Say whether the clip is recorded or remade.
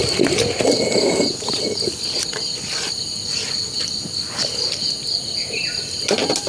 recorded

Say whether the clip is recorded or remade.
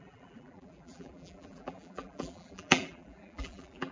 remade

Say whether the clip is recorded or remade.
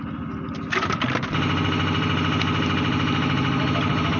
recorded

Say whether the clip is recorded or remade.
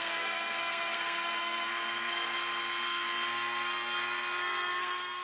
remade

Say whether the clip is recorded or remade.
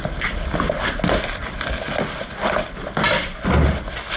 recorded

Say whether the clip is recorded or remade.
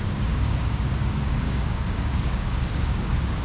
remade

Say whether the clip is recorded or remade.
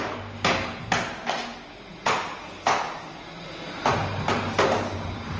recorded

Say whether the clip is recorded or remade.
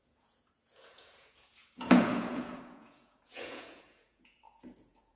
remade